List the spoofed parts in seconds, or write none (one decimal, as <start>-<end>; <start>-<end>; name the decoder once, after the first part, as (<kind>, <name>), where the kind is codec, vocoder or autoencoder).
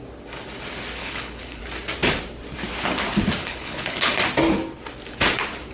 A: 1.0-1.6 (codec, HILCodec); 3.4-4.1